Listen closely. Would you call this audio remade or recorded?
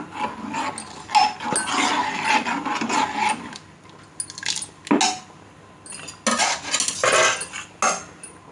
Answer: recorded